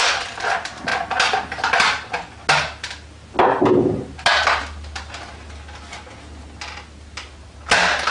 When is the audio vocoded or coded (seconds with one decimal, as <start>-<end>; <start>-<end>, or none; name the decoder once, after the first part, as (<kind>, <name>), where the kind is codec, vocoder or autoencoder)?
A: none